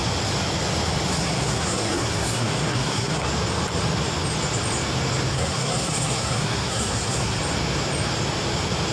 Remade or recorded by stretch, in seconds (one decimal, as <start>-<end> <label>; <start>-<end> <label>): 0.0-1.1 recorded; 1.1-3.3 remade; 3.3-5.3 recorded; 5.3-7.4 remade; 7.4-8.9 recorded